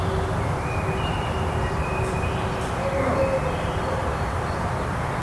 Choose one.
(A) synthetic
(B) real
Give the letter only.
A